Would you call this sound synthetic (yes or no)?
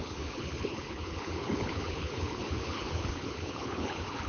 yes